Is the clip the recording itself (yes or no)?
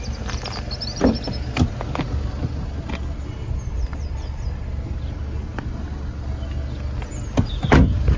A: yes